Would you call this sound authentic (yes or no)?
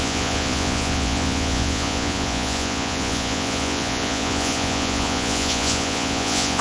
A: no